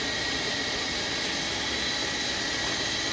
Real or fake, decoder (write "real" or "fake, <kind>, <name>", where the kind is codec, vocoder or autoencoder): real